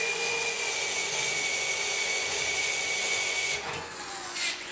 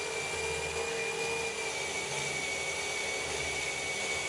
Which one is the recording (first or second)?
second